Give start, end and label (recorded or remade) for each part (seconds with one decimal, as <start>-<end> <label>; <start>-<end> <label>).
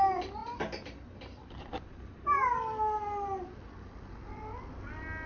0.0-5.3 recorded